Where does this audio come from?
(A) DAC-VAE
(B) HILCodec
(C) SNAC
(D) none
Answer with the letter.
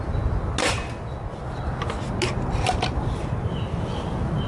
D